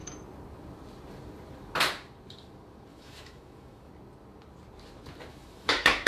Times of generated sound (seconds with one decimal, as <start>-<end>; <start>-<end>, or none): 2.9-3.9; 5.3-6.1